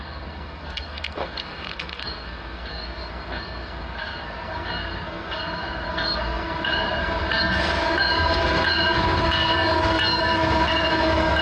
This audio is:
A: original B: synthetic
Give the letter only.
B